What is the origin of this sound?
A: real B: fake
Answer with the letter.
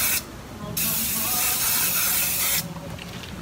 A